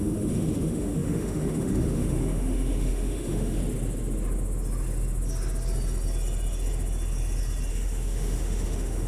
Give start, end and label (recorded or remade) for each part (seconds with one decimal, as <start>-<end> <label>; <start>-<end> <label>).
0.0-3.6 remade; 3.6-7.7 recorded; 7.7-9.1 remade